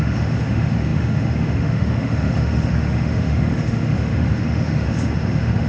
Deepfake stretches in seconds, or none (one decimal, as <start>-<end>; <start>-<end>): 0.0-5.7